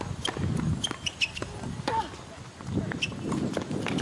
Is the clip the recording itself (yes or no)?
yes